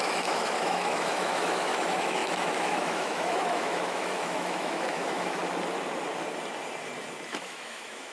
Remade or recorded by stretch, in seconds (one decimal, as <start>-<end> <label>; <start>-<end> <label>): 0.0-5.4 remade; 5.4-7.3 recorded; 7.3-8.1 remade